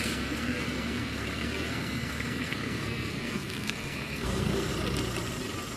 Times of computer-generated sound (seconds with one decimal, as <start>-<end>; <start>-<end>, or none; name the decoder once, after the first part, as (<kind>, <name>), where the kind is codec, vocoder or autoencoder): 0.0-4.7 (codec, SNAC)